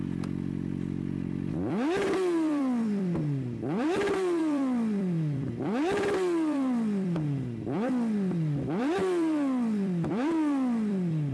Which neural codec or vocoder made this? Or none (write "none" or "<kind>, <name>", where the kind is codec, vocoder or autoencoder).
vocoder, BigVGAN v2